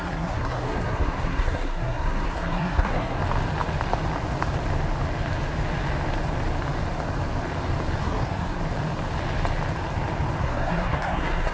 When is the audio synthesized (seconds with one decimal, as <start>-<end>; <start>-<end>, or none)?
0.0-3.2; 8.0-8.6; 10.4-11.5